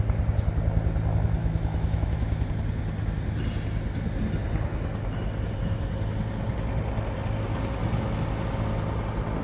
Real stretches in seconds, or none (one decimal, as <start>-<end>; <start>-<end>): 0.0-1.4; 2.5-9.4